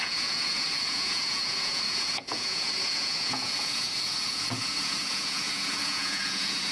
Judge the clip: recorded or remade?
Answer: remade